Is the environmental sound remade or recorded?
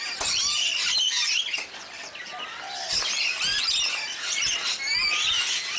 recorded